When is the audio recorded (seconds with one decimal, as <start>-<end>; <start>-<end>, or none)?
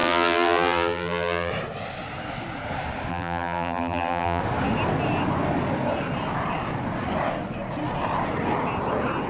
1.5-3.1; 4.4-9.3